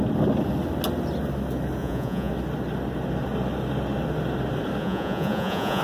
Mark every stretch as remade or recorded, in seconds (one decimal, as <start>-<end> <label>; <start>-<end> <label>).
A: 0.0-1.8 recorded; 1.8-2.3 remade; 2.3-4.8 recorded; 4.8-5.8 remade